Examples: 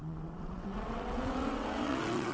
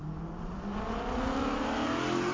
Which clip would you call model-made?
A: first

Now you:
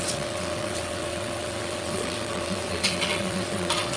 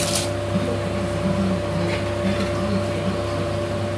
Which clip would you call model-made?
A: first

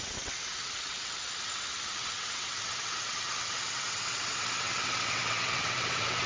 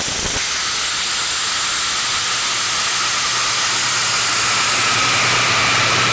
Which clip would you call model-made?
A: first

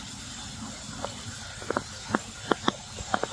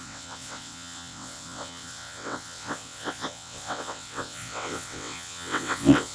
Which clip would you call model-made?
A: second